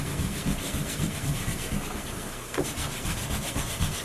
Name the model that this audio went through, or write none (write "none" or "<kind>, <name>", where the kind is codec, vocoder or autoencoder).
codec, SNAC